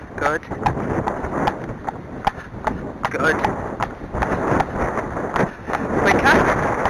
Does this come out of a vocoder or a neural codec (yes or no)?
no